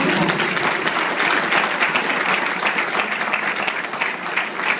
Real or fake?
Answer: real